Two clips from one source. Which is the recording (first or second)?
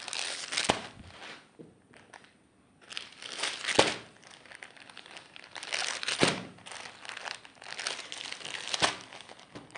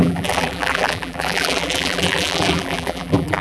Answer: first